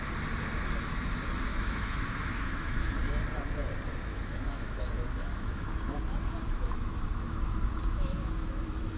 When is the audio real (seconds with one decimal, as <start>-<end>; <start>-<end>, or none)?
0.0-1.5; 3.0-4.1